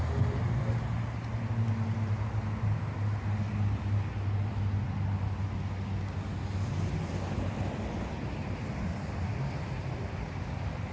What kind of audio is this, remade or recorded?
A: recorded